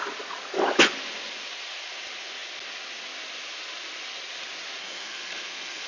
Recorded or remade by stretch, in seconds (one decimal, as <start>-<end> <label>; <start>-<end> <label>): 0.0-4.8 recorded; 4.8-5.9 remade